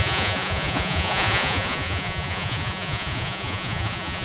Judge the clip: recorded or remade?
remade